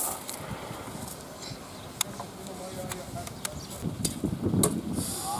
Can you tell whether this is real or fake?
real